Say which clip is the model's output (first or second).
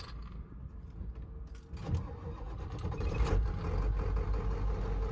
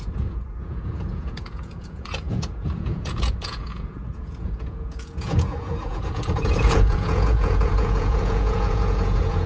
second